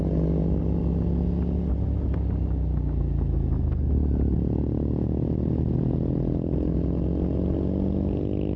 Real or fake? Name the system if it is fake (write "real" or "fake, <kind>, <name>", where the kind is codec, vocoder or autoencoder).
real